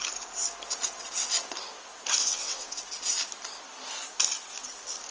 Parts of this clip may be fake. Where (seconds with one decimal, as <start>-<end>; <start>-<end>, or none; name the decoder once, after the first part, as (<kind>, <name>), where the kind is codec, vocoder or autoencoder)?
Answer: 2.2-2.8 (vocoder, WaveNeXt)